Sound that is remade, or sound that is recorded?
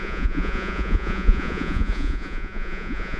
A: remade